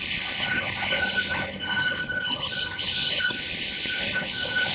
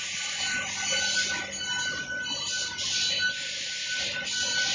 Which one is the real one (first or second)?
second